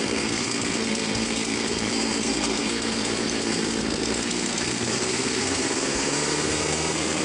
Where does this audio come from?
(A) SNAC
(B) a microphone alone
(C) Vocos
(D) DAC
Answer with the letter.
A